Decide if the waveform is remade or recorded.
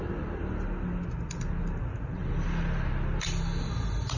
recorded